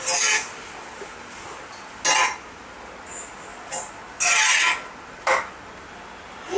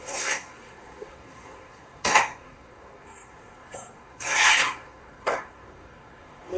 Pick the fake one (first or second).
second